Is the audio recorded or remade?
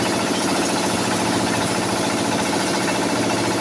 recorded